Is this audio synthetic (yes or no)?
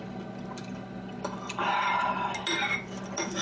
no